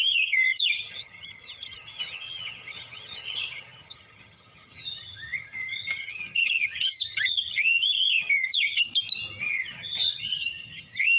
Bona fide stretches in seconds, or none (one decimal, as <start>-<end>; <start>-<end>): 8.8-9.4